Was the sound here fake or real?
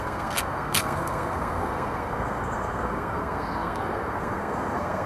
fake